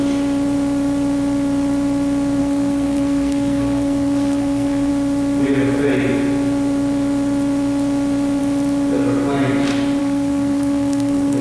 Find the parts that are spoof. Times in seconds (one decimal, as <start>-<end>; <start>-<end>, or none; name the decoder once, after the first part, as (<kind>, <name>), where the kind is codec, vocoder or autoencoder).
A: 2.4-4.9 (codec, SNAC); 10.0-11.4